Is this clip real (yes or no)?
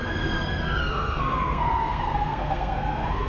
no